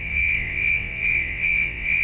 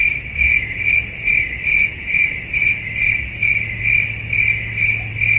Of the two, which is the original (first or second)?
second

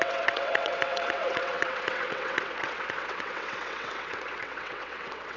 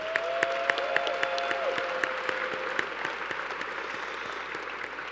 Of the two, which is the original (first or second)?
second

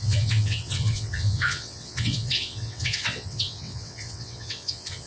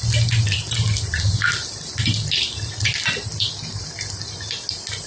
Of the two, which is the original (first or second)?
second